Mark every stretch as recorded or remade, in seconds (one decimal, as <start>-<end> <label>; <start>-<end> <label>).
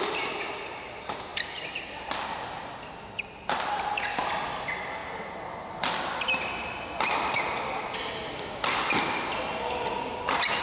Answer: 0.0-10.6 recorded